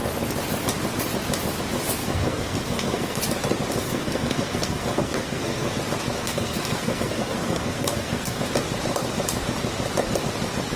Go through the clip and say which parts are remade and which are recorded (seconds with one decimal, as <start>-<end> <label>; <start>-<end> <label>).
0.0-2.0 recorded; 2.0-3.2 remade; 3.2-3.8 recorded; 3.8-5.7 remade; 5.7-6.2 recorded; 6.2-8.4 remade; 8.4-10.8 recorded